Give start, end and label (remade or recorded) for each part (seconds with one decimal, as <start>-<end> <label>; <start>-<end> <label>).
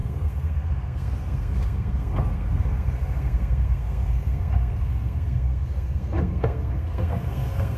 0.0-7.8 remade